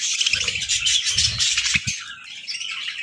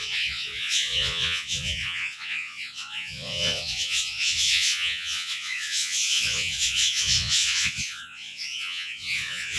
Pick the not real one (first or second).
second